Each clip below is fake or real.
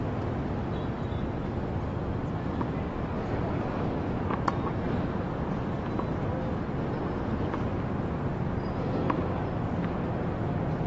real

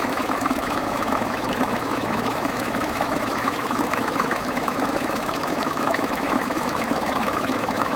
fake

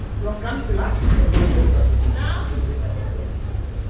real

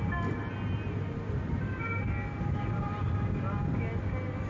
real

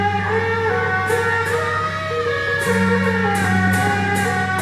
real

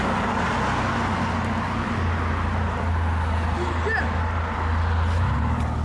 real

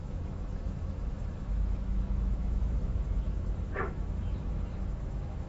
fake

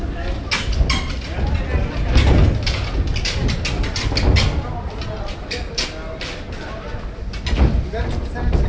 real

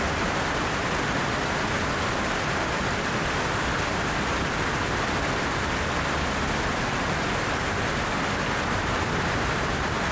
real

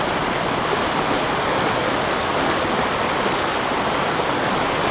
real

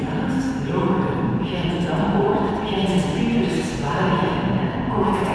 real